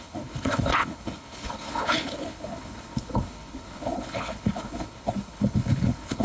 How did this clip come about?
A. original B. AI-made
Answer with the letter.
B